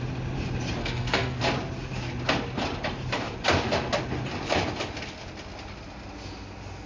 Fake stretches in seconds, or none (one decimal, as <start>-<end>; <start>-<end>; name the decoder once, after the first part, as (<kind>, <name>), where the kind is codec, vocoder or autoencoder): 0.8-1.4 (codec, SNAC)

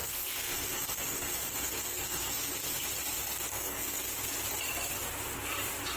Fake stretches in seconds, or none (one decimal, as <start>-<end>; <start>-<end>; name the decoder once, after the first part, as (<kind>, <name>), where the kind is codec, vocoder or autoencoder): 0.0-2.8 (codec, SNAC); 3.5-4.1